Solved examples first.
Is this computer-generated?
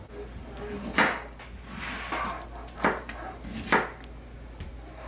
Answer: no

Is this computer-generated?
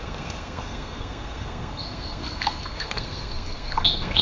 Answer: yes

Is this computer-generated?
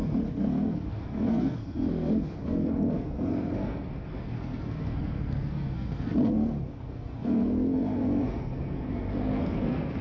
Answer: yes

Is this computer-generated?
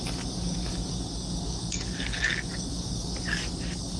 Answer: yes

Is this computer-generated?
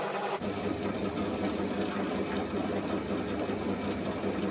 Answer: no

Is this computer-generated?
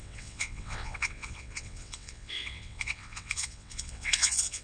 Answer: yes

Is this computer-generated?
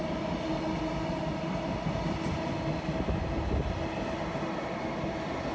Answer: no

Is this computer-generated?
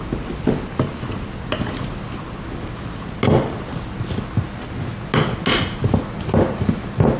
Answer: no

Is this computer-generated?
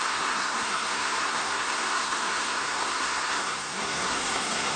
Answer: yes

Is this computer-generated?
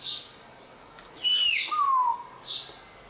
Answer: no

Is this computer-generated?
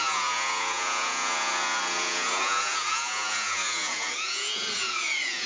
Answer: yes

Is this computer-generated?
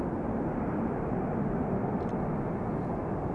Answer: no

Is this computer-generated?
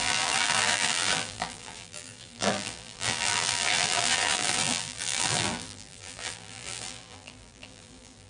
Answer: yes